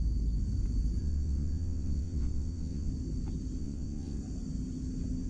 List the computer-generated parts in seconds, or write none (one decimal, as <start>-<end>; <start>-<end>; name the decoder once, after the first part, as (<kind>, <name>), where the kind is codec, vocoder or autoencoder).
1.0-2.9 (vocoder, WaveNeXt); 3.6-4.2